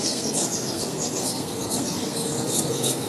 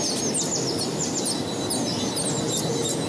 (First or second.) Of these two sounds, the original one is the second